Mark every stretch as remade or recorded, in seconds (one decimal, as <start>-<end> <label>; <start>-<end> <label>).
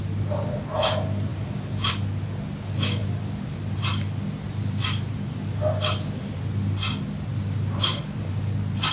0.0-1.3 recorded; 1.3-1.9 remade; 1.9-3.0 recorded; 3.0-6.4 remade; 6.4-7.3 recorded; 7.3-8.3 remade; 8.3-8.9 recorded